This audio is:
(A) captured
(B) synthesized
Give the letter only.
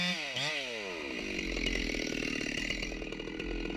A